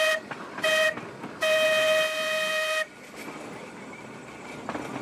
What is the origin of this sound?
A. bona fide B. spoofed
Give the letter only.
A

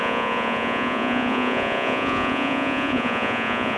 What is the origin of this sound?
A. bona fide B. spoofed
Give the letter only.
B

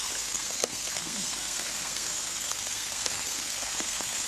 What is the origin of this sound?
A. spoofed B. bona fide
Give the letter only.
A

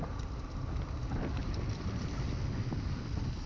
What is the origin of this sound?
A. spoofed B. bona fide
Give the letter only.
B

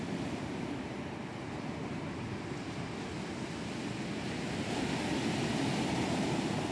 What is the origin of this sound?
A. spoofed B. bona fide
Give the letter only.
B